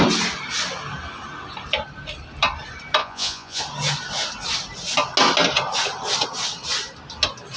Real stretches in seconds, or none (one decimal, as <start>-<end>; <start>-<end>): 0.0-3.0; 3.6-7.6